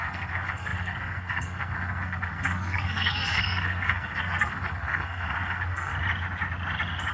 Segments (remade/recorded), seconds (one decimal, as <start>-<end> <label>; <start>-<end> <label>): 0.0-5.9 remade; 5.9-7.1 recorded